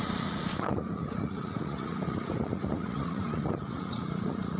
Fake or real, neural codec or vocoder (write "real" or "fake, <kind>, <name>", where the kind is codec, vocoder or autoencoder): fake, vocoder, Vocos